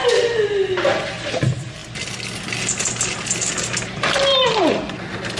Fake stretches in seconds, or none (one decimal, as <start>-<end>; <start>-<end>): 0.0-1.1